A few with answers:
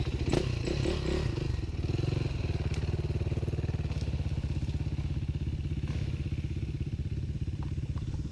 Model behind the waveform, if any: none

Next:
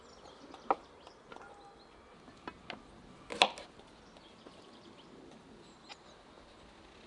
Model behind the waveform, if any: none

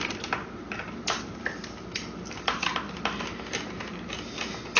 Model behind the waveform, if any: none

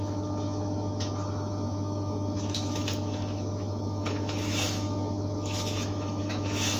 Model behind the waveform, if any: autoencoder, DAC-VAE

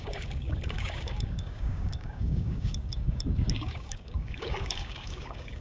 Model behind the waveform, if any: codec, DAC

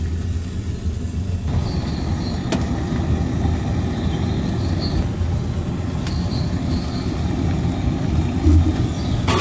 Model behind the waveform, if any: none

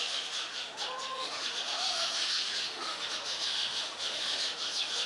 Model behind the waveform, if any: autoencoder, DAC-VAE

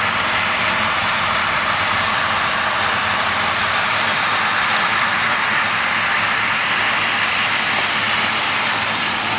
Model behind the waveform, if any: vocoder, BigVGAN v2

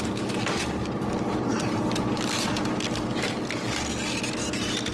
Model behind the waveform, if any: none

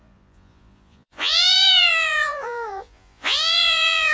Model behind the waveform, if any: vocoder, Vocos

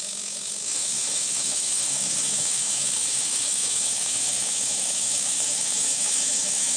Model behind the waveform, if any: autoencoder, DAC-VAE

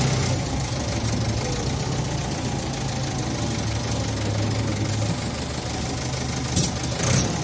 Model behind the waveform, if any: none